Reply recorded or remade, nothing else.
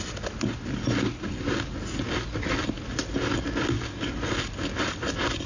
recorded